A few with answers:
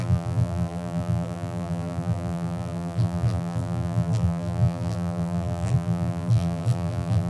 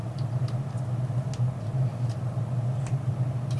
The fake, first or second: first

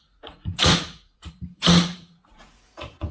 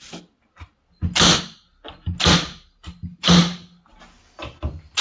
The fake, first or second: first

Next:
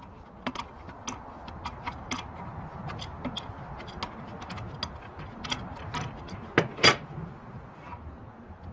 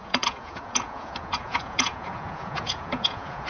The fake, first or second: second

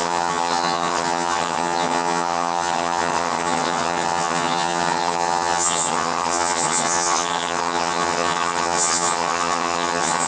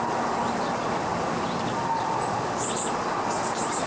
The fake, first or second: first